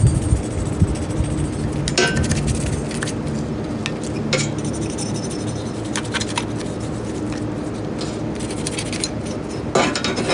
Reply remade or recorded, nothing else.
recorded